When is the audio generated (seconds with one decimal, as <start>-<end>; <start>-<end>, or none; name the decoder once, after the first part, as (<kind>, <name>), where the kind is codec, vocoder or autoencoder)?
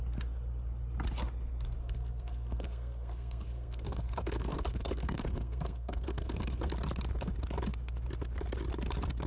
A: 1.8-6.7 (codec, SNAC)